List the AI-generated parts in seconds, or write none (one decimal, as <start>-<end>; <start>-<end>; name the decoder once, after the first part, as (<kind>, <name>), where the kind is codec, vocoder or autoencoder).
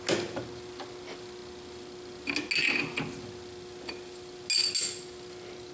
none